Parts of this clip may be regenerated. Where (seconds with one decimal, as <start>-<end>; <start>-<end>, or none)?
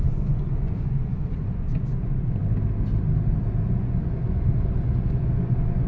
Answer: 0.0-2.4; 3.7-5.9